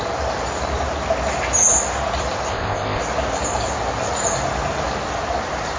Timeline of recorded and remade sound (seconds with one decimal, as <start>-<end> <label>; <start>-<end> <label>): 0.0-2.5 recorded; 2.5-3.0 remade; 3.0-5.8 recorded